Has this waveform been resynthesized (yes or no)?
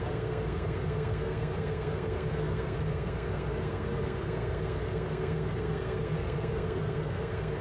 yes